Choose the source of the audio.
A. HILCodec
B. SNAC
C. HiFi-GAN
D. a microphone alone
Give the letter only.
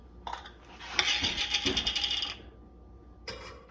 D